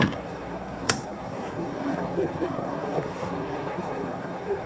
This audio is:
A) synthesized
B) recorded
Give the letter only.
A